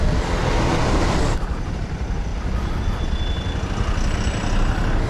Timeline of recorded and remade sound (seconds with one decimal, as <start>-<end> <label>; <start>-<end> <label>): 0.0-0.4 recorded; 0.4-1.2 remade; 1.2-5.1 recorded